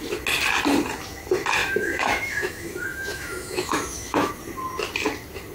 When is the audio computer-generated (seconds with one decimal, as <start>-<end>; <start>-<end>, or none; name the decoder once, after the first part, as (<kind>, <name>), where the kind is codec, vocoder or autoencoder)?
1.6-4.3 (autoencoder, DAC-VAE)